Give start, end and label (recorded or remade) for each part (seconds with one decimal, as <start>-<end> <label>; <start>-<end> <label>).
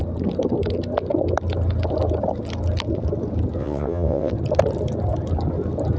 0.0-3.6 recorded; 3.6-4.3 remade; 4.3-6.0 recorded